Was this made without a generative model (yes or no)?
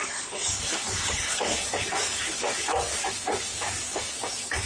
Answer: no